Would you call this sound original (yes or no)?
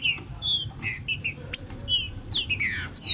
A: no